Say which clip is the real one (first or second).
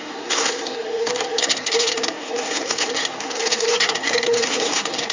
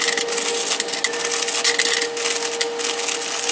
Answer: second